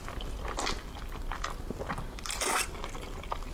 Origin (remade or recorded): recorded